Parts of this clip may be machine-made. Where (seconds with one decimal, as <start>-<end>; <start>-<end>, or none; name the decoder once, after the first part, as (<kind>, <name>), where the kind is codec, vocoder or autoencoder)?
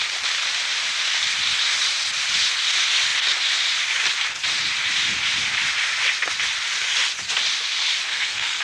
8.1-8.6 (codec, SNAC)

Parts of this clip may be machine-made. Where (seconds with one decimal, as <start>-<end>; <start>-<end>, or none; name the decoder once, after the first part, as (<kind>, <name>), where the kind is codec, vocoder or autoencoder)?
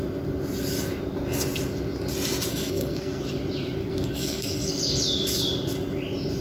2.5-3.2 (codec, SNAC); 3.8-4.8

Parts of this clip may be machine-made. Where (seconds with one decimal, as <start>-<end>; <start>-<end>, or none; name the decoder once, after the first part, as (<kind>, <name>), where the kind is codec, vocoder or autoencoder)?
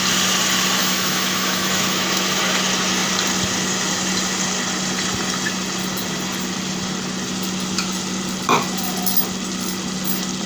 0.8-2.4 (autoencoder, DAC-VAE)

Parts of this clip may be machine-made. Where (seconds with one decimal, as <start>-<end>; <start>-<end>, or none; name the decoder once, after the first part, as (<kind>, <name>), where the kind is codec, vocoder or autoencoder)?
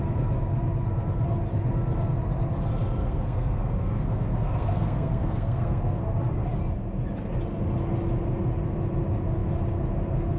3.0-6.0 (codec, SNAC)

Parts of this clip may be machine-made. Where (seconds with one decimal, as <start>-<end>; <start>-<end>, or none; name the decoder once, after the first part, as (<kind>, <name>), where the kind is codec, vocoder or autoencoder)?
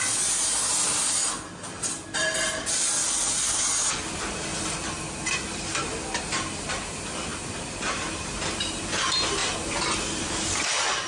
none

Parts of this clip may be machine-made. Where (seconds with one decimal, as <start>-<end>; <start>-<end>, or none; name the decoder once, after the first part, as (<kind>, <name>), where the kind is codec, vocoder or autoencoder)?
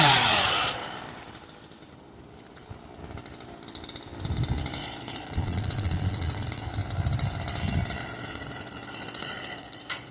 0.0-0.8 (vocoder, Vocos); 4.8-6.8; 8.0-10.1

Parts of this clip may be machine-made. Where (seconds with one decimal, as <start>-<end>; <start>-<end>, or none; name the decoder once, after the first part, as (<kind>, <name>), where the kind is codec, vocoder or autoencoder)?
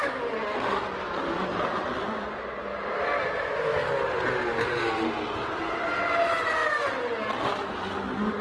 none